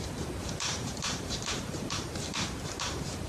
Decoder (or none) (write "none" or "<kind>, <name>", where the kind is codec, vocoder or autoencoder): vocoder, BigVGAN v2